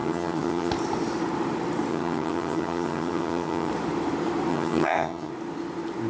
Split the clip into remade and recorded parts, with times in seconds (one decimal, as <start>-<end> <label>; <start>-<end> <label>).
0.0-0.7 remade; 0.7-1.9 recorded; 1.9-3.7 remade; 3.7-4.5 recorded; 4.5-5.3 remade; 5.3-6.1 recorded